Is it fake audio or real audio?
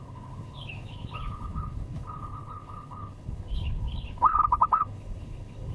fake